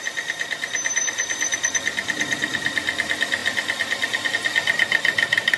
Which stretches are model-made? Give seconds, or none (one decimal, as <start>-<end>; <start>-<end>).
none